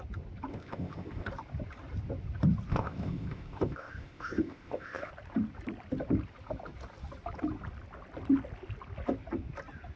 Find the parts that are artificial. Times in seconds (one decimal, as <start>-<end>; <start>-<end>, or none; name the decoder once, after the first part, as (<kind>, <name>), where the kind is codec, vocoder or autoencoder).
0.5-1.3 (codec, ZipCodec); 2.7-5.1